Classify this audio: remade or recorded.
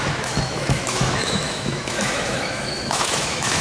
remade